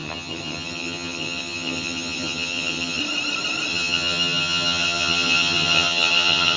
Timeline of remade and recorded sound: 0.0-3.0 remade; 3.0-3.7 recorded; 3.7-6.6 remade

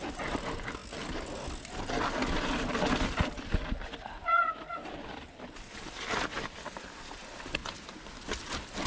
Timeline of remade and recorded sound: 0.0-8.9 recorded